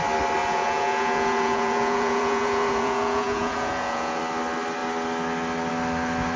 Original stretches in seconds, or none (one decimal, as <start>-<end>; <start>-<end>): 0.0-0.4; 4.2-6.4